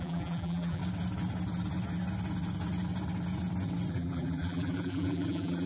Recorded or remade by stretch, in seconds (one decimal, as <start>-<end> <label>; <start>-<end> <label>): 0.0-0.8 remade; 0.8-3.9 recorded; 3.9-5.7 remade